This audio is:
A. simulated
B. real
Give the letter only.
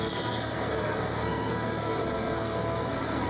A